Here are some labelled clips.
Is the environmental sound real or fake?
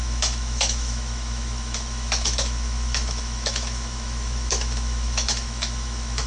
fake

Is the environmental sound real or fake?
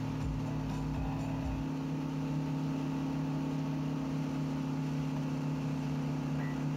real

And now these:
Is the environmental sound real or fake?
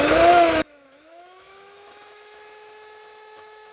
fake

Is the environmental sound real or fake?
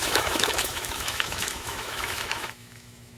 fake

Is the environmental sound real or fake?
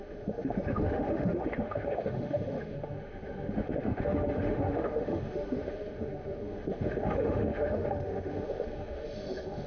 fake